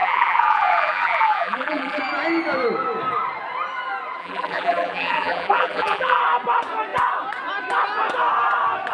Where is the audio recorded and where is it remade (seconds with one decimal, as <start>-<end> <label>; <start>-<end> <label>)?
0.0-2.0 remade; 2.0-4.2 recorded; 4.2-6.2 remade; 6.2-8.9 recorded